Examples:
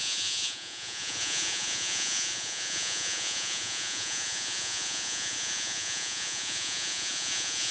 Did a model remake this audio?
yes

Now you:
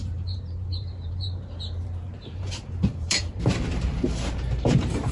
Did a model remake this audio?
yes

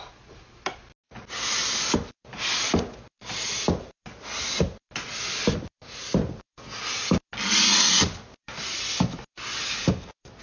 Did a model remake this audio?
no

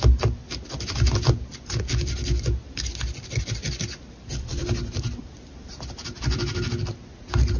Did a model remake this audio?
no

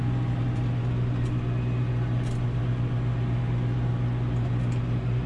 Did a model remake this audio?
no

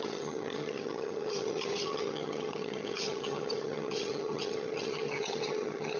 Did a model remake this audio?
yes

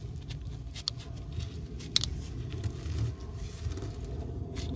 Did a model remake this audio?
no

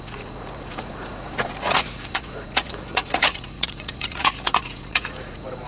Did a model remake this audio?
yes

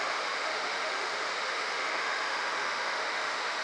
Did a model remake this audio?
yes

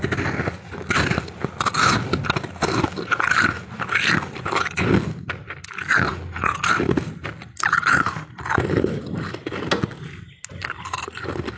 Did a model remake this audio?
no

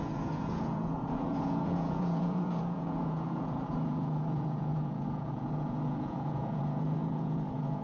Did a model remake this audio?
yes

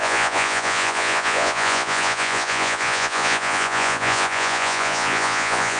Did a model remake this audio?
yes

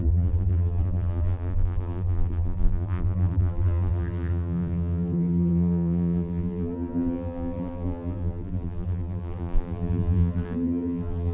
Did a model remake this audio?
yes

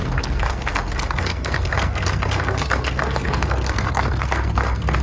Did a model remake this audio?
yes